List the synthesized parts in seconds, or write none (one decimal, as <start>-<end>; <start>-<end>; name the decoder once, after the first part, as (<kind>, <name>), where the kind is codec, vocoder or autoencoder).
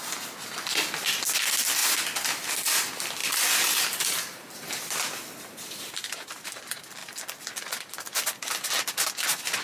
3.2-6.5 (vocoder, BigVGAN v2)